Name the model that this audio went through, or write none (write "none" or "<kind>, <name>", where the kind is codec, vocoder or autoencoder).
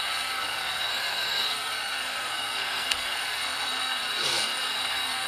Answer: codec, SNAC